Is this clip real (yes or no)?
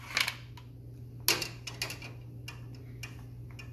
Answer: yes